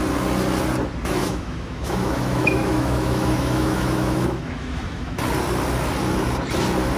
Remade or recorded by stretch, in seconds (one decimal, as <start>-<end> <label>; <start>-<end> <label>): 0.0-1.2 recorded; 1.2-5.2 remade; 5.2-7.0 recorded